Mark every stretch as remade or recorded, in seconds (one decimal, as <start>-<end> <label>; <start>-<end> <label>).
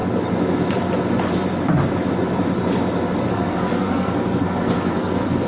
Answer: 0.0-3.3 recorded; 3.3-5.5 remade